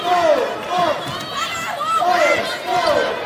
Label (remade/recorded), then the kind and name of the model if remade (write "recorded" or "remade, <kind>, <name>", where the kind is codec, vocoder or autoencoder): recorded